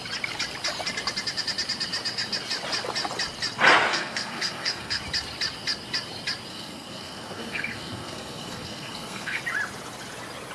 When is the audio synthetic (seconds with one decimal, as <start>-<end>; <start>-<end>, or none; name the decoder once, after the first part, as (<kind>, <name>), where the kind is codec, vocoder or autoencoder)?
3.9-5.0 (codec, SNAC); 6.5-9.4